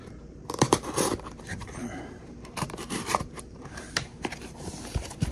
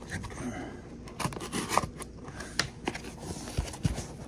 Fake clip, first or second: first